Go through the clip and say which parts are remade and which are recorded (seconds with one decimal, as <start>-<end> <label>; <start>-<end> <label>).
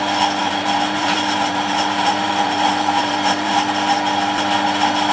0.0-0.4 recorded; 0.4-3.5 remade; 3.5-5.1 recorded